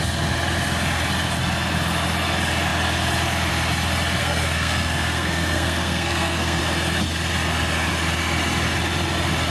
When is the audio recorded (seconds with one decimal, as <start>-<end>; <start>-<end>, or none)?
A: 0.0-4.2; 6.6-9.5